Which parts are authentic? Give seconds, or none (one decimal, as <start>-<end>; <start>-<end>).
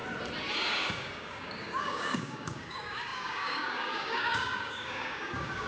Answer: 0.0-0.5